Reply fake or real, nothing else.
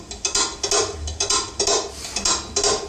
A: real